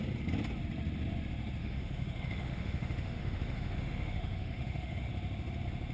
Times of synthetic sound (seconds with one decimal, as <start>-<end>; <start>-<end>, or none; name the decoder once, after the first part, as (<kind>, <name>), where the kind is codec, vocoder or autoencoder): 1.6-5.1 (autoencoder, DAC-VAE)